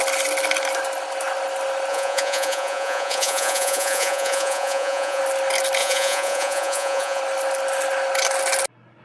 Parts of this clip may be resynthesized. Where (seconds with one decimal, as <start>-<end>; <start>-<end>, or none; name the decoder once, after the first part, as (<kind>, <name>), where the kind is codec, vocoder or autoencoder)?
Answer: 1.9-5.2 (vocoder, Vocos); 5.8-7.2